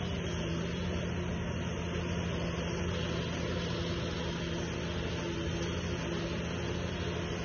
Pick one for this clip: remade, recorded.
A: recorded